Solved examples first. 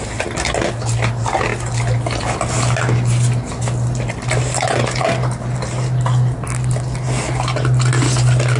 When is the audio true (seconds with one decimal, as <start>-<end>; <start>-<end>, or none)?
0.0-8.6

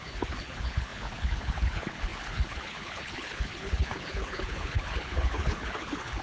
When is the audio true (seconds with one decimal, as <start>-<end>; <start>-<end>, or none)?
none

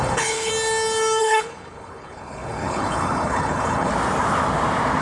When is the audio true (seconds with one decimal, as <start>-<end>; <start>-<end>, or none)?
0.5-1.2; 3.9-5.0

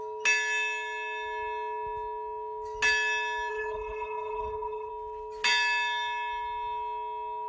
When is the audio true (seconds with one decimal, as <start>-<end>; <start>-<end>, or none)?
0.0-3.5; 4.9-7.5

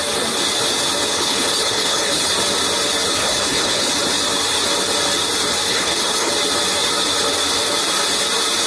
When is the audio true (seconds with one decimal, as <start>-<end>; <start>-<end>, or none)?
0.0-1.1; 2.3-3.2; 3.9-5.7; 6.3-8.7

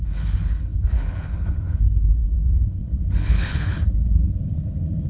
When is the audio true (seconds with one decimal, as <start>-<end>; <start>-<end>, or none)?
none